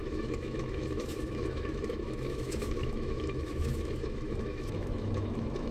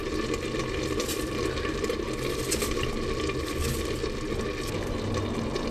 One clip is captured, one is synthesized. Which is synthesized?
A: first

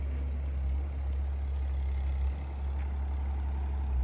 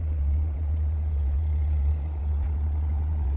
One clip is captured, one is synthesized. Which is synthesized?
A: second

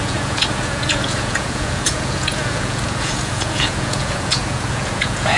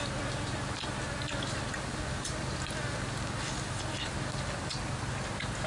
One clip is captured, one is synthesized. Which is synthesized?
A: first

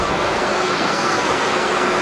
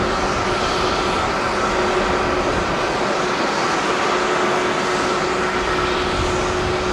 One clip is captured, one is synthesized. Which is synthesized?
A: first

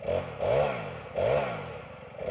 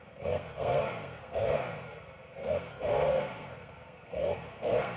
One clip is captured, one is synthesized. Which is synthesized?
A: second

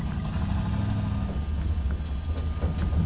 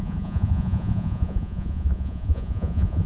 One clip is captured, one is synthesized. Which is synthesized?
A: second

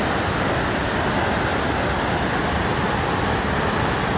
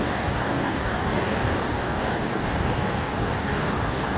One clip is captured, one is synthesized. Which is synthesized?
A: second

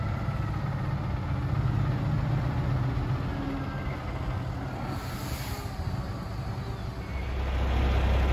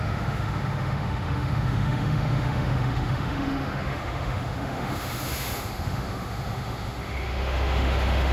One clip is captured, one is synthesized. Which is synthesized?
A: second